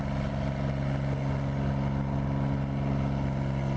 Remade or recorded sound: recorded